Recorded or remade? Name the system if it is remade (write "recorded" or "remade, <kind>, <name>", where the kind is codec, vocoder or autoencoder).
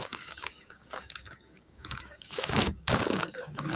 remade, codec, DAC